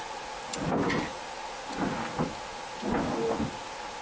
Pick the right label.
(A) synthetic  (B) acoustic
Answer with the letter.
B